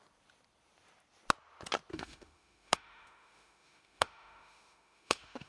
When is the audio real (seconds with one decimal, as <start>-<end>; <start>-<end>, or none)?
0.0-1.9